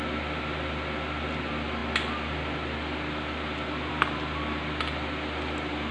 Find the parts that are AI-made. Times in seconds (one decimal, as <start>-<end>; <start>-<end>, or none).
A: none